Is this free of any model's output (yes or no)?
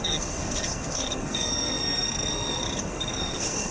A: no